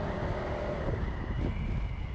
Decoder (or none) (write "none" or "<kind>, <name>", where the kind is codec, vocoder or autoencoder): none